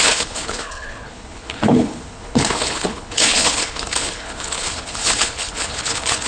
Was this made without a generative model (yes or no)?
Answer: no